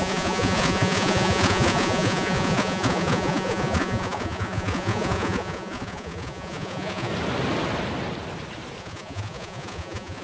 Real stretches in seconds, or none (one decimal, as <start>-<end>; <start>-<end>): 7.1-8.8